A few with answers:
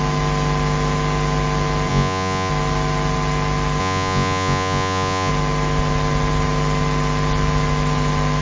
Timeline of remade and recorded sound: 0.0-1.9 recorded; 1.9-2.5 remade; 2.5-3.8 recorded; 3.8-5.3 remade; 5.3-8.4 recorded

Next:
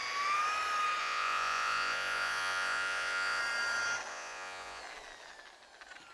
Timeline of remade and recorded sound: 0.0-1.0 recorded; 1.0-3.4 remade; 3.4-4.1 recorded; 4.1-4.8 remade; 4.8-6.1 recorded

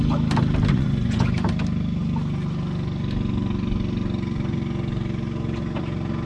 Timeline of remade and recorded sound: 0.0-0.7 recorded; 0.7-1.2 remade; 1.2-6.3 recorded